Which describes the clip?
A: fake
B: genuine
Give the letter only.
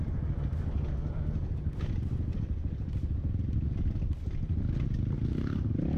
B